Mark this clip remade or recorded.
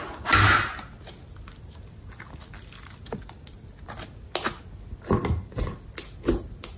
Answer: recorded